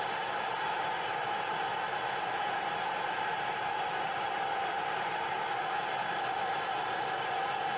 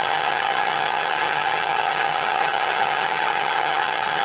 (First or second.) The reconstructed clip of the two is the second